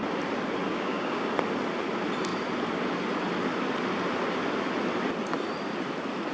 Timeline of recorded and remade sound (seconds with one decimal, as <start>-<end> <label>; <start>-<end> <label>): 0.0-0.7 recorded; 0.7-1.3 remade; 1.3-6.3 recorded

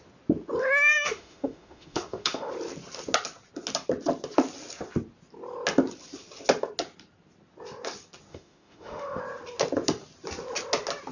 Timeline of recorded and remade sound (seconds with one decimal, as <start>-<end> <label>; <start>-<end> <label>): 0.0-0.6 recorded; 0.6-2.5 remade; 2.5-8.3 recorded; 8.3-9.2 remade; 9.2-11.1 recorded

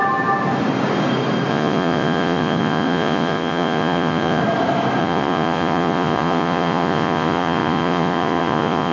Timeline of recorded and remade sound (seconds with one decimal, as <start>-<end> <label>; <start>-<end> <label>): 0.0-1.5 recorded; 1.5-4.4 remade; 4.4-5.0 recorded; 5.0-8.9 remade

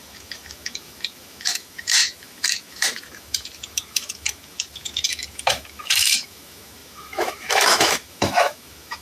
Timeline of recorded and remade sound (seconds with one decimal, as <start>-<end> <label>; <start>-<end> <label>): 0.0-9.0 remade